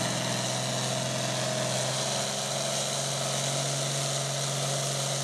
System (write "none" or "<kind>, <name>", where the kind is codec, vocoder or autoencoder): none